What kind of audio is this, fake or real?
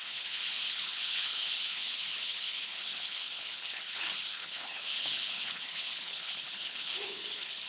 fake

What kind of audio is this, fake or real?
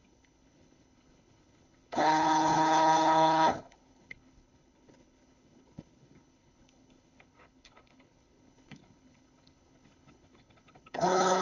fake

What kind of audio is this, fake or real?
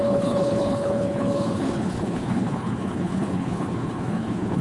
fake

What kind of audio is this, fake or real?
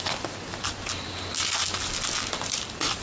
real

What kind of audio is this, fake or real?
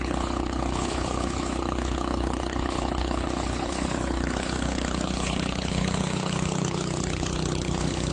fake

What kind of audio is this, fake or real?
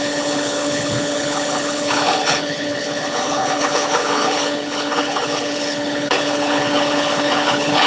fake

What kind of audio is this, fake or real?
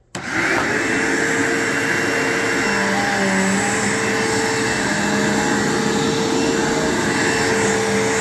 real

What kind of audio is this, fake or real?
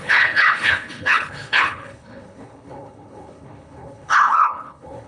fake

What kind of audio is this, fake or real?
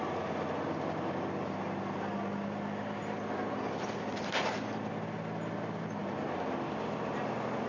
real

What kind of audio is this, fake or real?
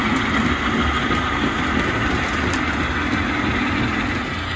real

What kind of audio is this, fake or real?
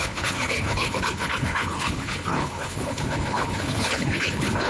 fake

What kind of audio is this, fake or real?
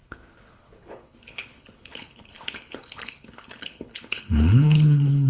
fake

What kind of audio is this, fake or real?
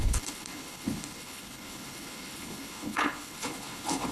fake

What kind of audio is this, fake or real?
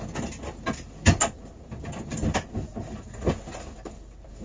real